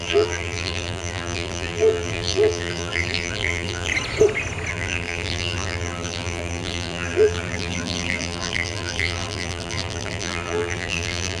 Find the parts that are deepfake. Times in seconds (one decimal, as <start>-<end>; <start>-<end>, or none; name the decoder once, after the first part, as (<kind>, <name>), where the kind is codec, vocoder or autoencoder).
0.0-3.9 (vocoder, BigVGAN v2); 4.7-11.4